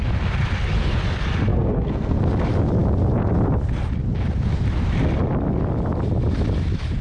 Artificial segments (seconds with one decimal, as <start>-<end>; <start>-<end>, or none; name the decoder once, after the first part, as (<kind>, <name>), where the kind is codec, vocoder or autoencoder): 1.5-2.2 (codec, SNAC)